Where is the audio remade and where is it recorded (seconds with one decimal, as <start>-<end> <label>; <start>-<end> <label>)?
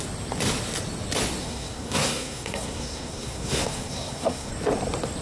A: 0.0-1.4 recorded; 1.4-4.5 remade; 4.5-5.2 recorded